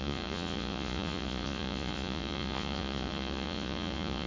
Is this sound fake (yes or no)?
yes